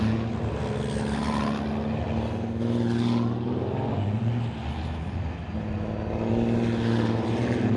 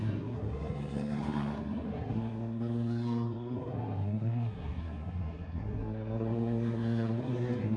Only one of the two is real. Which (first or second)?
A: first